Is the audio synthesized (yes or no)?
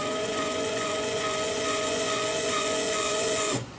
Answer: yes